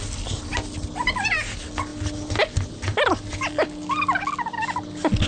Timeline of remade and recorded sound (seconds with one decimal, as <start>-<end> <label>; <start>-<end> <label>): 0.0-5.3 recorded